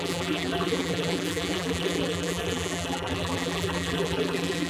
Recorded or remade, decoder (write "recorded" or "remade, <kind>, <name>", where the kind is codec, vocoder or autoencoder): remade, vocoder, BigVGAN v2